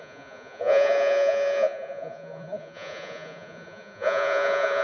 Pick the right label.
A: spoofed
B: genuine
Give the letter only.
A